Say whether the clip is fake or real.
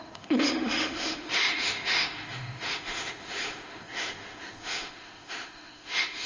fake